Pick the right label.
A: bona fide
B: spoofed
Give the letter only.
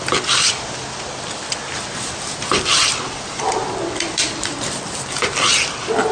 A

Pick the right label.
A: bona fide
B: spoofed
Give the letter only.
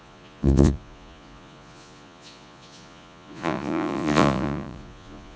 B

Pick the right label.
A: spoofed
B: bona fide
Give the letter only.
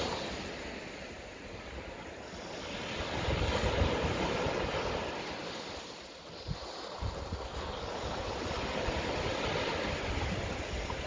B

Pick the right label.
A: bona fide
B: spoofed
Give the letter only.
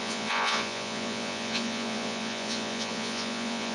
B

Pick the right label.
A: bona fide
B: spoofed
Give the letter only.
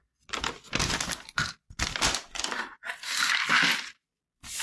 A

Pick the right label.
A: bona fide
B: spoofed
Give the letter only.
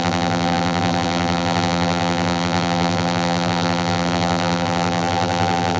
B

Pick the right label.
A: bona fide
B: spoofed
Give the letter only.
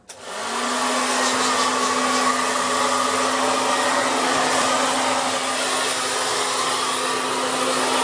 A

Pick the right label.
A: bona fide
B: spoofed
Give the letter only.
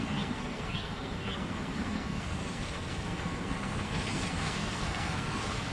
B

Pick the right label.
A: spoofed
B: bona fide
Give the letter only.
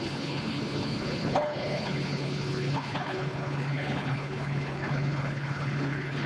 A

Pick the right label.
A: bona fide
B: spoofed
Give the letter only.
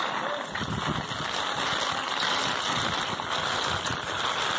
A